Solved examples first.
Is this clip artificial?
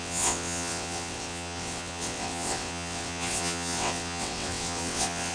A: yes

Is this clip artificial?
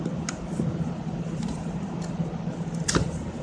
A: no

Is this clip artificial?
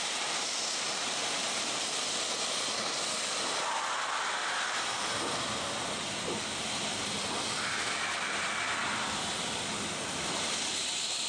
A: yes